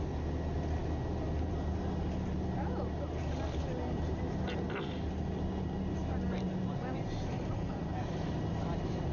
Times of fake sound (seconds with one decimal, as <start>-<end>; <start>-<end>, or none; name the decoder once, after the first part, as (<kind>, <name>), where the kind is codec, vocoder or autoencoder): none